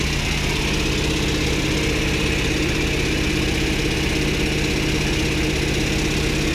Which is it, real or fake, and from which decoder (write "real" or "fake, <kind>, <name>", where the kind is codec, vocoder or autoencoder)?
real